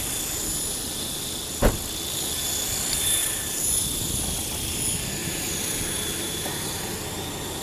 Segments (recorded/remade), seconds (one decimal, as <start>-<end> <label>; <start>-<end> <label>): 0.0-3.2 recorded; 3.2-4.2 remade; 4.2-5.2 recorded; 5.2-6.8 remade; 6.8-7.6 recorded